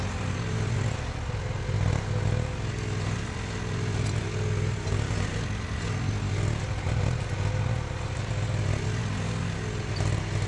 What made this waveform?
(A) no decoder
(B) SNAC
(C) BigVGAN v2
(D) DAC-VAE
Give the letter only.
A